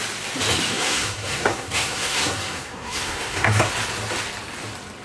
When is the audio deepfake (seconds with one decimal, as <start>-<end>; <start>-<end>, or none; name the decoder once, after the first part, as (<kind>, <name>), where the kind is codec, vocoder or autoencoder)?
0.7-3.7 (codec, SNAC)